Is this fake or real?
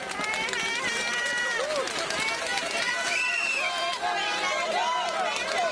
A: real